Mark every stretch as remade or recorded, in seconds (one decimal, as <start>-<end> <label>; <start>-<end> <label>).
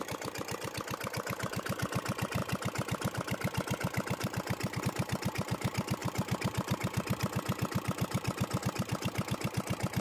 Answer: 0.0-10.0 recorded